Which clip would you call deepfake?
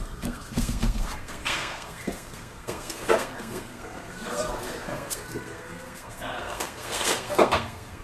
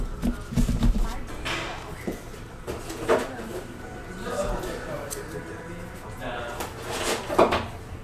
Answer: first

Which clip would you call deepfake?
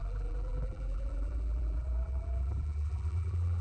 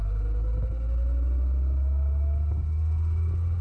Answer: first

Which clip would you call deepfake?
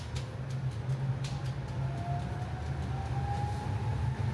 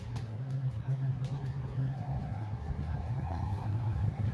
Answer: second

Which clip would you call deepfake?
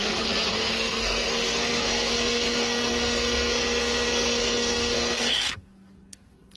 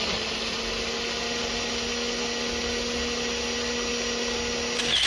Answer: first